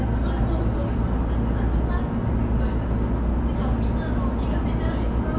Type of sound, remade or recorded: recorded